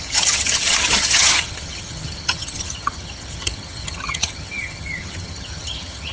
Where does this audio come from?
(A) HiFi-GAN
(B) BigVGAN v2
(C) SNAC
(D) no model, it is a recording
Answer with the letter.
A